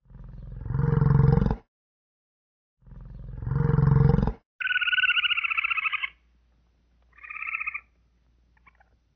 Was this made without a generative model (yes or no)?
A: yes